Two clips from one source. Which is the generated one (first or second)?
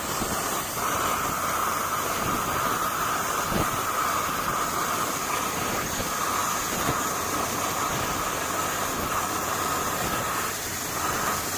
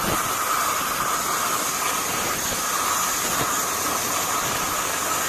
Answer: first